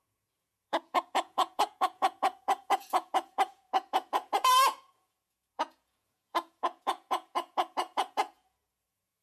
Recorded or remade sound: remade